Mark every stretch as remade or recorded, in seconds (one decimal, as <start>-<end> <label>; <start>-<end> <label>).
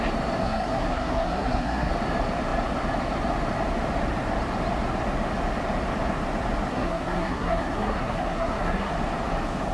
0.0-0.4 recorded; 0.4-1.9 remade; 1.9-6.7 recorded; 6.7-8.9 remade; 8.9-9.7 recorded